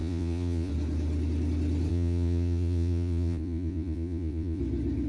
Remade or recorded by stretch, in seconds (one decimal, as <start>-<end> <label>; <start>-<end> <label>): 0.0-0.7 remade; 0.7-1.9 recorded; 1.9-4.6 remade; 4.6-5.1 recorded